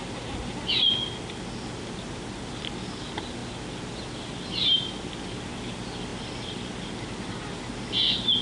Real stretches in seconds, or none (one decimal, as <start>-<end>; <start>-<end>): 0.0-8.4